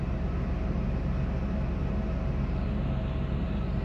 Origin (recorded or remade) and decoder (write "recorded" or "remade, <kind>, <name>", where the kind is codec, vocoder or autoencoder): recorded